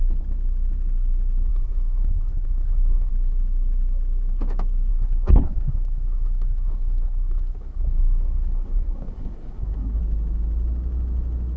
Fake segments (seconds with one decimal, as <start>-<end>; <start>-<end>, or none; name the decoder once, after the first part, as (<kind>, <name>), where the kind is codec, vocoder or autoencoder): 1.5-3.1 (codec, SNAC); 4.9-10.0